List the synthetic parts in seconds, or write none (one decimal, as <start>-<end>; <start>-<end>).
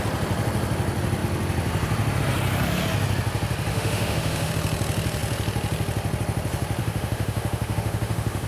3.7-4.5; 6.8-8.5